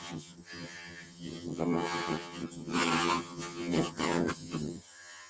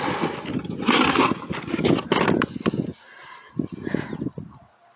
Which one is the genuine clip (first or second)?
second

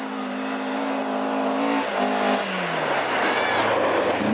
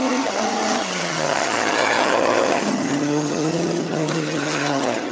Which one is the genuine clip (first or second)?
first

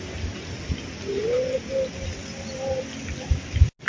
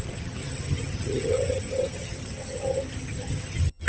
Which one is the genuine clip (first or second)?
first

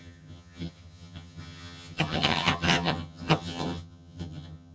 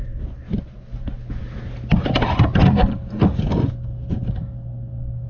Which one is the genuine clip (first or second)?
second